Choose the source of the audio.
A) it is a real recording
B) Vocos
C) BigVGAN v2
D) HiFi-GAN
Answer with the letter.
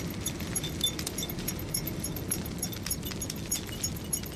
C